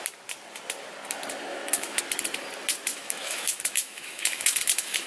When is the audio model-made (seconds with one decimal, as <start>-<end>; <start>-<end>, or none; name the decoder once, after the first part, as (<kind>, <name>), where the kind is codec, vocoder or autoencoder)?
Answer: 1.5-2.0 (autoencoder, DAC-VAE); 2.9-5.1